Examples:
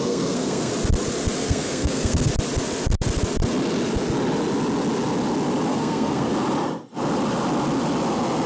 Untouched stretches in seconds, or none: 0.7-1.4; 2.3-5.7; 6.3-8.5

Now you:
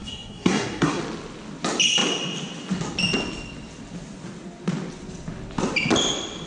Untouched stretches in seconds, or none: 1.0-6.5

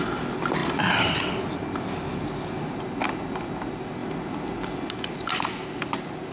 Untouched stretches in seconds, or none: 0.0-6.3

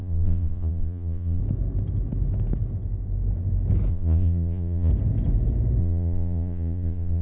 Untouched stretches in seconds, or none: 1.4-3.9; 4.9-5.8

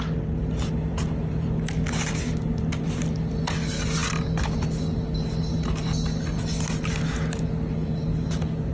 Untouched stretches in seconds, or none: 0.0-8.7

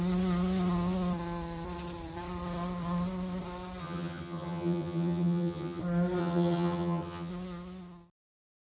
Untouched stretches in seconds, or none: 0.0-3.8; 5.8-6.2; 7.3-8.7

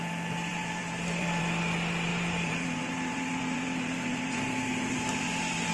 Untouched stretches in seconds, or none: 0.0-0.5; 1.4-2.1